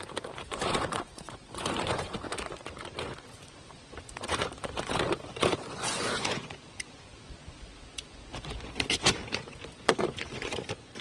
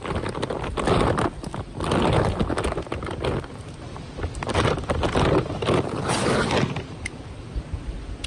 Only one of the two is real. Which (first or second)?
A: second